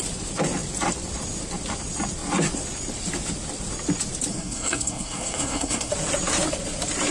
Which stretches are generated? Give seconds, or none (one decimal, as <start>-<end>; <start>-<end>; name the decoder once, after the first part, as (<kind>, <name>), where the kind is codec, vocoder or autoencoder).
4.3-5.9 (codec, SNAC)